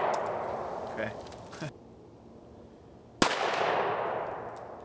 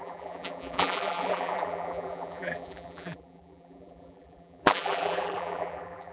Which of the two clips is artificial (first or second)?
second